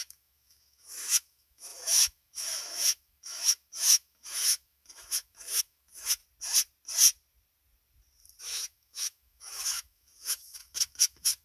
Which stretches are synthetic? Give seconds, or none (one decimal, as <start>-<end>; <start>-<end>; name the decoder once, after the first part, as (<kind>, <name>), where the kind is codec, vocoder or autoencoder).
0.0-6.2 (autoencoder, DAC-VAE); 8.4-11.4